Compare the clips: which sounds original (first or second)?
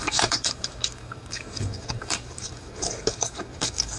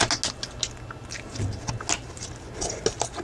second